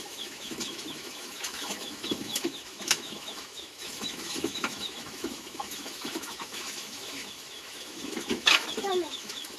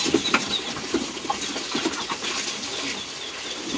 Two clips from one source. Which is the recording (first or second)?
second